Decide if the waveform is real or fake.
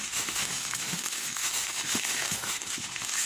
fake